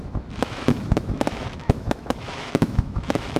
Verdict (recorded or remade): remade